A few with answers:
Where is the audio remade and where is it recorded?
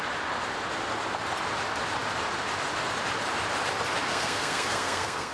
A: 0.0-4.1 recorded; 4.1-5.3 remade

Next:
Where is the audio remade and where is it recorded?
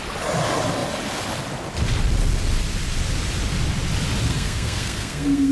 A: 0.0-4.3 recorded; 4.3-5.5 remade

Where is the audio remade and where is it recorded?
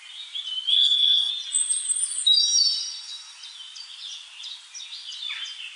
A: 0.0-0.7 recorded; 0.7-1.3 remade; 1.3-5.8 recorded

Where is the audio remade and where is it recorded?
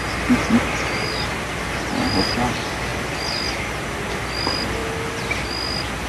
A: 0.0-6.1 recorded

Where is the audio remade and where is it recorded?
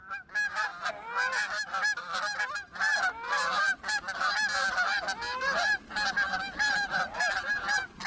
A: 0.0-8.1 recorded